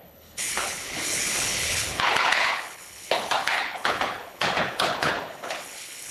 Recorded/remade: remade